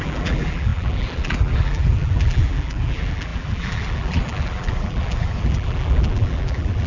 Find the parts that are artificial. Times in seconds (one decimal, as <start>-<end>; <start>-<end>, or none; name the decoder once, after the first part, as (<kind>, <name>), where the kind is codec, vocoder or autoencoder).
0.0-6.9 (vocoder, BigVGAN v2)